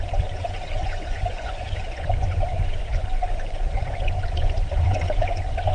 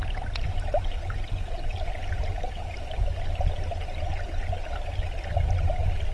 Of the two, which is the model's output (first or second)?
first